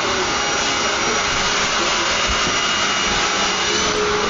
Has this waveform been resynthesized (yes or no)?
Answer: no